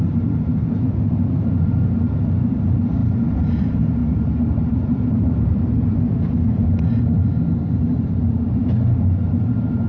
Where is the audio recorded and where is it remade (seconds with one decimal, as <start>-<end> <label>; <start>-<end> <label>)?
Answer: 0.0-8.6 remade; 8.6-9.3 recorded; 9.3-9.9 remade